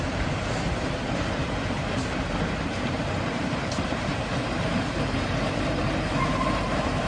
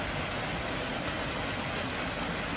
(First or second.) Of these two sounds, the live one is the second